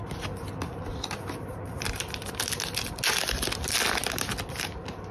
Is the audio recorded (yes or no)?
yes